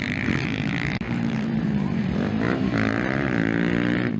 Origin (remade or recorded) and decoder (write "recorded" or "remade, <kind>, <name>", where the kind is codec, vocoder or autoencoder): remade, vocoder, BigVGAN v2